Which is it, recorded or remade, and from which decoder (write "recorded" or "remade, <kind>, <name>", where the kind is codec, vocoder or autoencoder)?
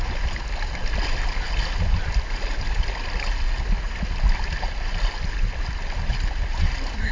recorded